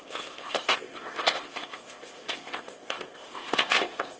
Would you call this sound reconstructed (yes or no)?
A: yes